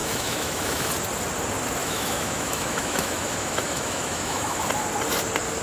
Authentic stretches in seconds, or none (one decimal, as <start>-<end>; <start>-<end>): 0.9-1.8; 4.6-5.6